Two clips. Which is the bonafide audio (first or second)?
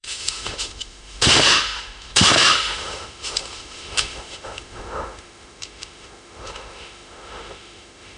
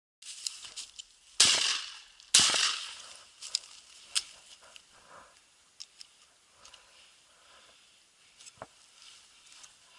second